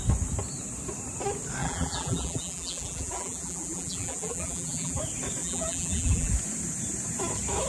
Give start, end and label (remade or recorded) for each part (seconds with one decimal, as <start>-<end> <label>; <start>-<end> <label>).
0.0-1.6 recorded; 1.6-5.0 remade; 5.0-5.4 recorded; 5.4-6.3 remade; 6.3-7.7 recorded